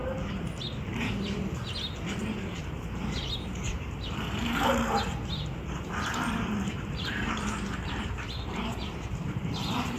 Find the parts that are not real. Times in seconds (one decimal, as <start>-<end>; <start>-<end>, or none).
2.6-5.0; 5.7-10.0